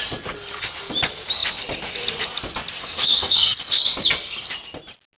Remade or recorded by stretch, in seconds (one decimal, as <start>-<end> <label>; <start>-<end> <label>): 0.0-2.8 recorded; 2.8-3.6 remade; 3.6-5.2 recorded